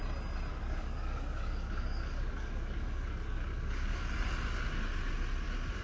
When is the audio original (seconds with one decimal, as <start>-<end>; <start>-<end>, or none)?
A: 0.0-0.5; 4.0-5.8